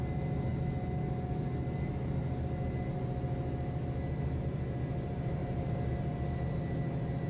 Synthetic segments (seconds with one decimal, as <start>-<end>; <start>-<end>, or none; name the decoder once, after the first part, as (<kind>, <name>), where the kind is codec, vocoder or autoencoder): 5.4-5.9 (vocoder, BigVGAN v2)